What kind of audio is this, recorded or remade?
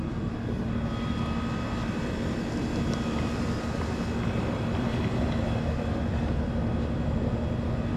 recorded